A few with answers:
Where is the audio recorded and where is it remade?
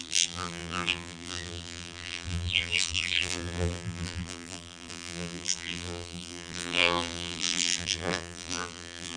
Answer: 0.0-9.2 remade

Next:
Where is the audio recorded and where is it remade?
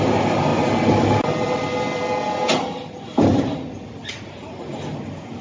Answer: 0.0-5.4 recorded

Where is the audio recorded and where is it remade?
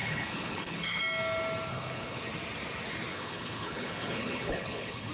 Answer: 0.0-1.0 remade; 1.0-1.7 recorded; 1.7-2.2 remade; 2.2-3.1 recorded; 3.1-5.1 remade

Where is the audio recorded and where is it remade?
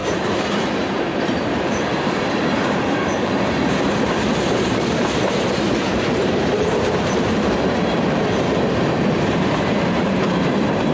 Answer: 0.0-10.9 remade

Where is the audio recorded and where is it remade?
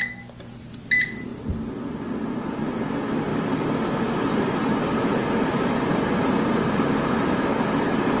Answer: 0.0-3.3 recorded; 3.3-8.2 remade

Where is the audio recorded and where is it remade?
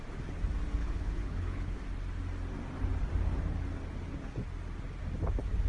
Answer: 0.0-0.8 recorded; 0.8-1.8 remade; 1.8-5.7 recorded